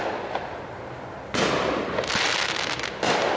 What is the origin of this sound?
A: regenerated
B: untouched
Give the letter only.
B